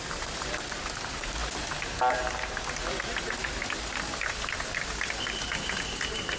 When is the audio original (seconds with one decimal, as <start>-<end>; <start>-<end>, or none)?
0.0-6.4